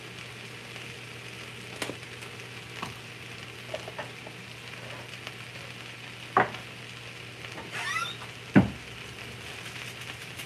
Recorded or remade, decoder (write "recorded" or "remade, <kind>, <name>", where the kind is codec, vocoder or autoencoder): recorded